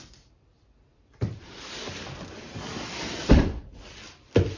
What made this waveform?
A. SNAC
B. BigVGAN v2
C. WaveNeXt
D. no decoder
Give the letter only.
B